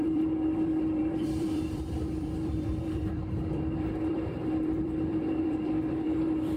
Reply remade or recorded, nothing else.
remade